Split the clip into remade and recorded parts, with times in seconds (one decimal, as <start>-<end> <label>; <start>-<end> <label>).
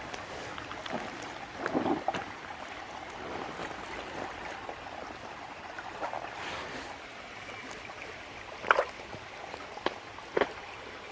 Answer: 0.0-3.6 recorded; 3.6-6.9 remade; 6.9-11.1 recorded